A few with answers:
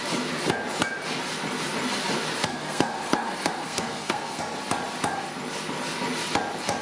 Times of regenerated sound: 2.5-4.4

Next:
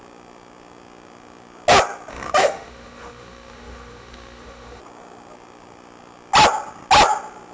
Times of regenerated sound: 2.1-4.8

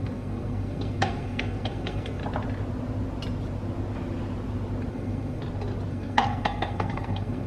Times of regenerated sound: 0.0-2.2; 4.9-5.4; 5.9-7.5

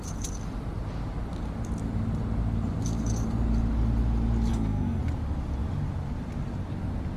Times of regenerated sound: 4.5-5.0

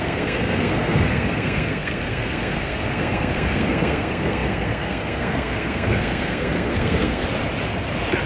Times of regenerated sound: 0.0-7.2

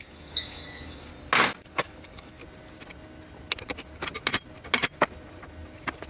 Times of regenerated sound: 0.0-1.1; 1.7-2.4

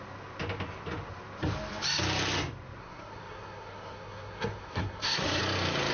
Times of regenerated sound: 2.8-5.4